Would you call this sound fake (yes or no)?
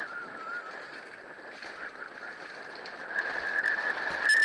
no